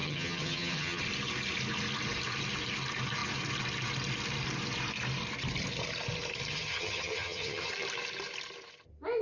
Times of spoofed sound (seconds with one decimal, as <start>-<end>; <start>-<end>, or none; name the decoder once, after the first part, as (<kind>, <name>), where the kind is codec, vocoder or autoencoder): 0.0-1.0 (vocoder, HiFi-GAN); 6.5-7.7